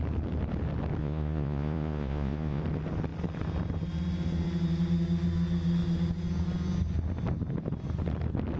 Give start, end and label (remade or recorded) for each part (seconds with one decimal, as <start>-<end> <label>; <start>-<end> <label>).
0.0-1.0 recorded; 1.0-2.6 remade; 2.6-8.6 recorded